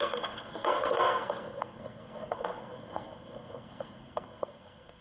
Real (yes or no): no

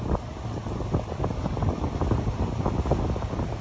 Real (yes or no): yes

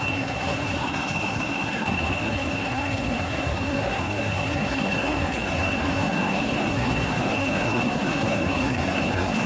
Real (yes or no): no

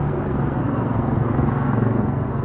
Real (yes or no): no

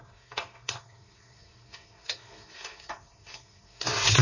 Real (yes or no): no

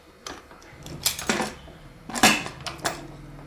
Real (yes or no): yes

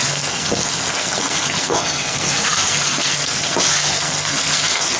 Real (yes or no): no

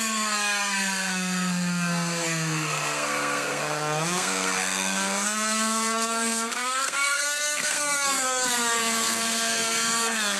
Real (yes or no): no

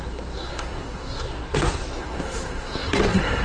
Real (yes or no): no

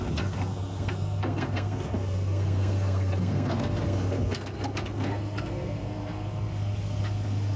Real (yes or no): no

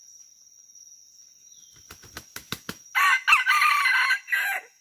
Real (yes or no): yes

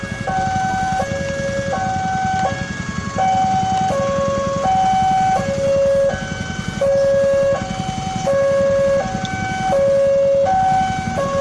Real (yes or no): yes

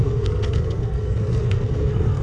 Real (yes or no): no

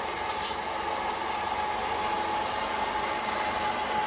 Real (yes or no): yes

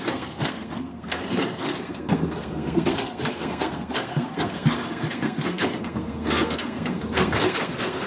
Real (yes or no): no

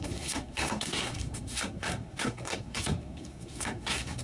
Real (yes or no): no